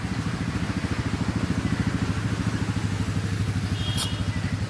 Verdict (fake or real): real